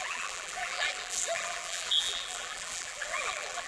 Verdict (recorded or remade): remade